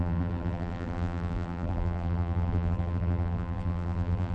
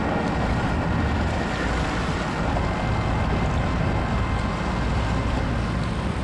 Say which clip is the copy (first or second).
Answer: first